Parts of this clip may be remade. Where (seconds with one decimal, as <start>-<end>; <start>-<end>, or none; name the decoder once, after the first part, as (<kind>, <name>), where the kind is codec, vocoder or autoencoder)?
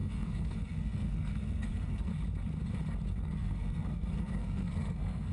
0.0-2.1 (codec, SNAC); 3.1-5.3